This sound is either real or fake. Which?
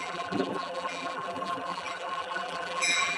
fake